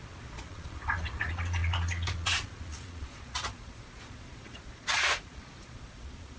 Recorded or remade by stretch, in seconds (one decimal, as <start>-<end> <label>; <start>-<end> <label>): 0.0-6.4 remade